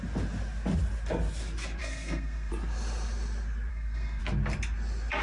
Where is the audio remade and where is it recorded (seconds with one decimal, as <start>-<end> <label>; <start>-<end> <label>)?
0.0-1.8 recorded; 1.8-2.5 remade; 2.5-3.7 recorded; 3.7-4.2 remade; 4.2-5.2 recorded